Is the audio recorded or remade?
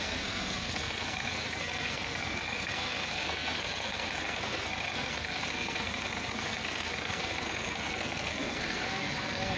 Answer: remade